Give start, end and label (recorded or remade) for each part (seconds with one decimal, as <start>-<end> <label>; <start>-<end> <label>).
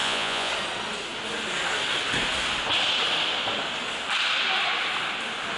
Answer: 0.0-0.5 remade; 0.5-5.6 recorded